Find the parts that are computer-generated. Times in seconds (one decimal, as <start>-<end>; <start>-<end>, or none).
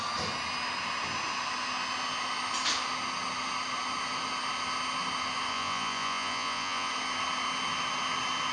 5.5-6.9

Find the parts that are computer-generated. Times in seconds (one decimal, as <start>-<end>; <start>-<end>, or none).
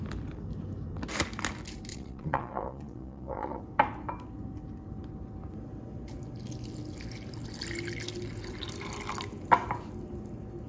1.9-3.6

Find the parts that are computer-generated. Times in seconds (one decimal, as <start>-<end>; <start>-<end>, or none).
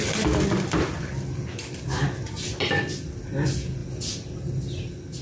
none